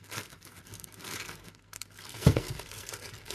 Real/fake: fake